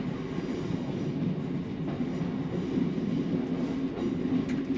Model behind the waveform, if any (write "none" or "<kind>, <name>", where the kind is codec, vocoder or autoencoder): none